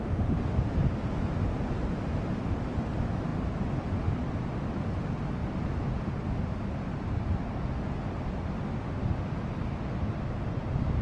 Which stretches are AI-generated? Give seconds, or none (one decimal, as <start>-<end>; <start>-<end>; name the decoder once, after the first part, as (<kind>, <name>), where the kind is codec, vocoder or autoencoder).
5.4-6.1 (vocoder, BigVGAN v2)